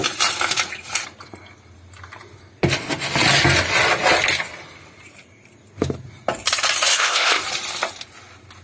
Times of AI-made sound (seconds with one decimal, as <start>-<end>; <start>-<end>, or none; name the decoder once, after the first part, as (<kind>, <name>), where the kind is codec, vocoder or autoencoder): 6.9-7.4 (codec, ZipCodec)